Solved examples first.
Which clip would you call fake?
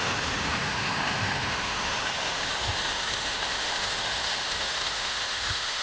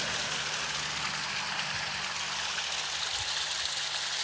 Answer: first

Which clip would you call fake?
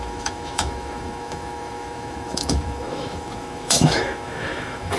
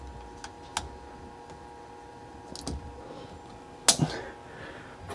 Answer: first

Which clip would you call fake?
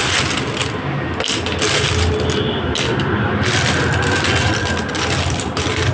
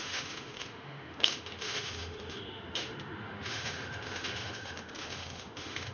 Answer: second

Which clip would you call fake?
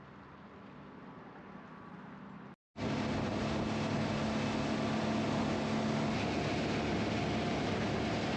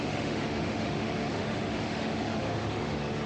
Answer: second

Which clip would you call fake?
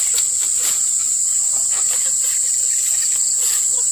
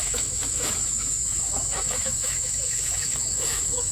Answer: second